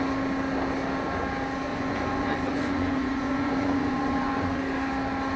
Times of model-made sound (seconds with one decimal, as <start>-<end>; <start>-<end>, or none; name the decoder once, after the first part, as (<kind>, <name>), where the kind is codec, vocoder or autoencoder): 1.7-4.6 (vocoder, Vocos)